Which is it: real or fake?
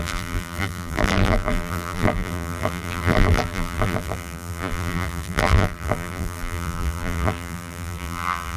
fake